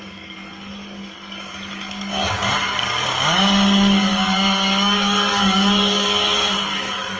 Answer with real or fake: fake